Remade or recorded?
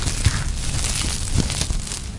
recorded